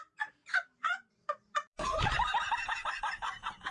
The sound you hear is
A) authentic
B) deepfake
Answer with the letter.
B